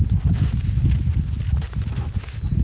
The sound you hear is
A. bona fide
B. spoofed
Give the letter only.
A